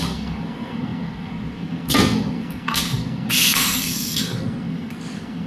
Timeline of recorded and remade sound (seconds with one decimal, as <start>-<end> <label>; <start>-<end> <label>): 0.0-5.5 remade